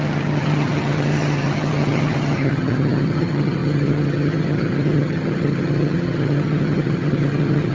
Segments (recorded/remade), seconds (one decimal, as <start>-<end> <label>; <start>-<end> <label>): 0.0-7.7 remade